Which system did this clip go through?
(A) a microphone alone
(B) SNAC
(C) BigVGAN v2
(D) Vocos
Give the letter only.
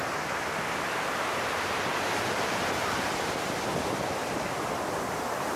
C